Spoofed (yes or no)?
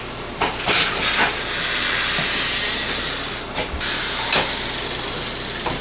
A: no